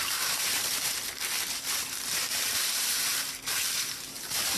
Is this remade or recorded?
remade